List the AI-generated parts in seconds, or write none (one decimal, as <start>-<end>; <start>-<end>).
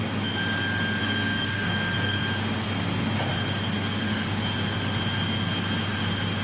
1.0-2.2